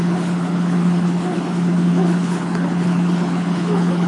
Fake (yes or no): yes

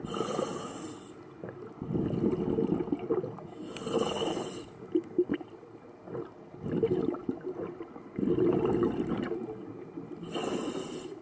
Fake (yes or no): no